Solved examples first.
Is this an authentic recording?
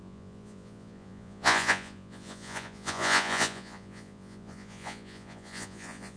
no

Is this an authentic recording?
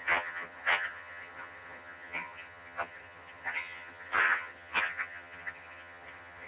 no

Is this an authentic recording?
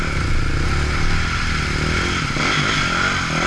yes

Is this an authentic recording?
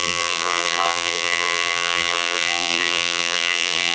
no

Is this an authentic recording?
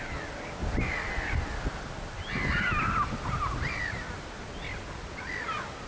yes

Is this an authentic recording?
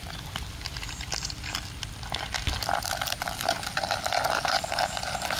yes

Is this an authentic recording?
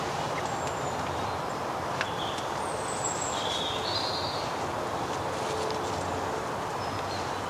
yes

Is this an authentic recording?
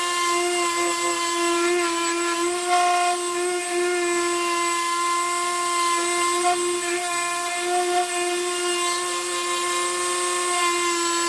yes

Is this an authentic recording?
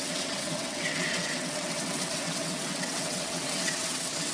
no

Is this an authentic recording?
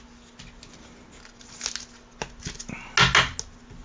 yes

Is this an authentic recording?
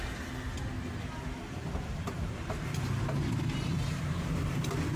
yes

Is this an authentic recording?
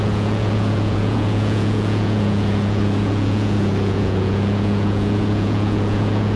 no